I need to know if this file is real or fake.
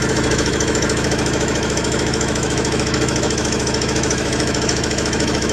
fake